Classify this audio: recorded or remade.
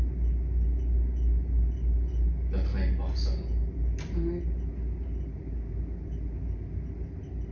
recorded